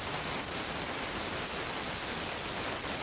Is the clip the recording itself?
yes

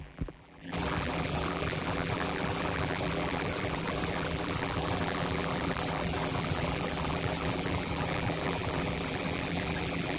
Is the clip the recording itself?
no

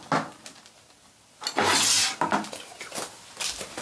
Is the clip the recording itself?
yes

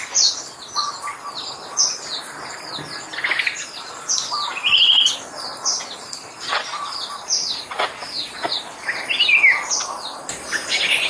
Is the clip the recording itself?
yes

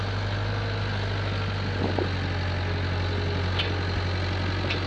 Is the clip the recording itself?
yes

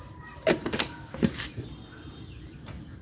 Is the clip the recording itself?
no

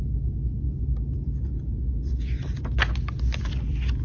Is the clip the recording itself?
yes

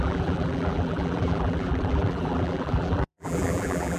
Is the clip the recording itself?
no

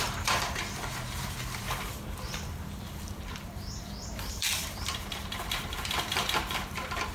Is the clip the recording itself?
no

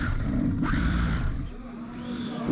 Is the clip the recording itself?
no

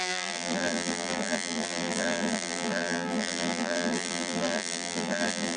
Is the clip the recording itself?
no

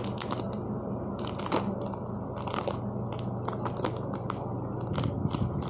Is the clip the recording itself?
yes